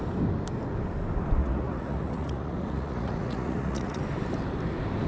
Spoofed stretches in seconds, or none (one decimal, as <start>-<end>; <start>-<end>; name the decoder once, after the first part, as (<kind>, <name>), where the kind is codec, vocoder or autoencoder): 1.4-4.0 (vocoder, Vocos)